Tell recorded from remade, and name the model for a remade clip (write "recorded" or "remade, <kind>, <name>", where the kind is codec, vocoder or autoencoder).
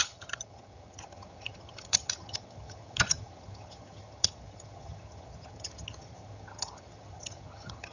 remade, vocoder, HiFi-GAN